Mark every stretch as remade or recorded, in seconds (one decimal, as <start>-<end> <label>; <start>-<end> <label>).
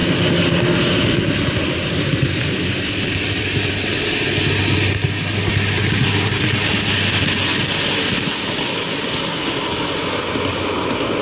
0.0-11.2 recorded